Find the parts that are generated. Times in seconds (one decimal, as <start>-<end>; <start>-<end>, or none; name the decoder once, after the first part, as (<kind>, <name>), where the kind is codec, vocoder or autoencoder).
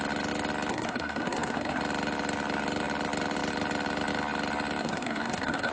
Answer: 0.7-1.8 (codec, SNAC); 4.8-5.7